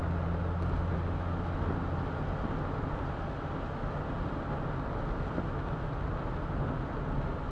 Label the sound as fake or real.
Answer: real